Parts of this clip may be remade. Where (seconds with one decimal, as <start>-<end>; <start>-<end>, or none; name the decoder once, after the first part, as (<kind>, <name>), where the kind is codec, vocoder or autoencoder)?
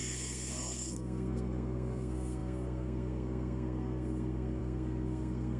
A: 0.0-5.6 (codec, SNAC)